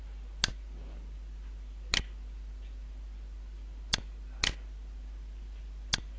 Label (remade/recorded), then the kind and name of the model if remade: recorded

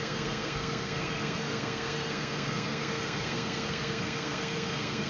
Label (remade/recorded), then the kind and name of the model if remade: remade, codec, SNAC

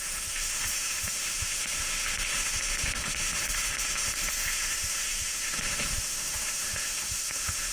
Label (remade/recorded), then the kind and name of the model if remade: remade, autoencoder, DAC-VAE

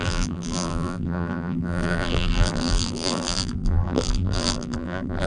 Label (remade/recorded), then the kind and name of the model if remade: remade, vocoder, BigVGAN v2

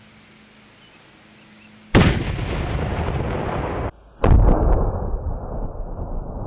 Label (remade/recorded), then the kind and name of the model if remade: recorded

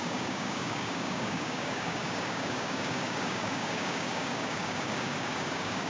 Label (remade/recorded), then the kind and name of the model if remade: remade, codec, DAC